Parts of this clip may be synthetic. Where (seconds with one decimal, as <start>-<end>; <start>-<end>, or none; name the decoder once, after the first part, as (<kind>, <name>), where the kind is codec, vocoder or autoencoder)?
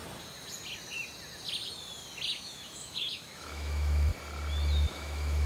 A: 2.3-4.1 (autoencoder, DAC-VAE); 4.9-5.5